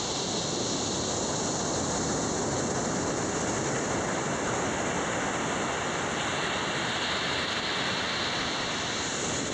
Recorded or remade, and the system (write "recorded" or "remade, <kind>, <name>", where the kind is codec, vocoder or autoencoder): recorded